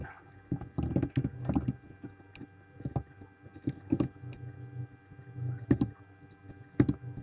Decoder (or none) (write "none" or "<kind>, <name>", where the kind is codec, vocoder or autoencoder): none